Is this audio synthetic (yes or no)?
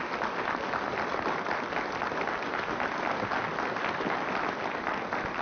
no